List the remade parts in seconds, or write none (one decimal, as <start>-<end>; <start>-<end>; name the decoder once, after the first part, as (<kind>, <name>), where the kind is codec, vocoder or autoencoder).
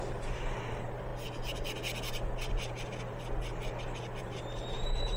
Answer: 0.0-1.1 (vocoder, BigVGAN v2); 4.2-5.2